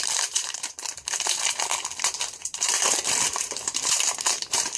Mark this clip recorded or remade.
remade